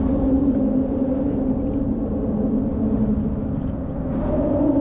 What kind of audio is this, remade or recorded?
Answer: recorded